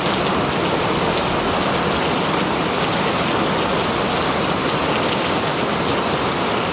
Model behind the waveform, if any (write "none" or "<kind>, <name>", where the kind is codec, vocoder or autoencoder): none